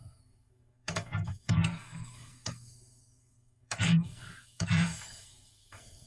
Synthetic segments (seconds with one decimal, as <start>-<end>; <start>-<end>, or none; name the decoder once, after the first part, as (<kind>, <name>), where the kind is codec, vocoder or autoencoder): 0.0-6.1 (codec, SNAC)